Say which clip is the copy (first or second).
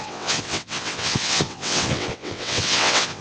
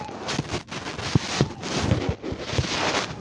first